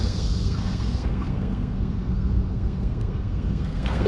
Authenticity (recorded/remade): remade